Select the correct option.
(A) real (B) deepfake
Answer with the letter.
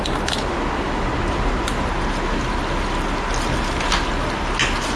A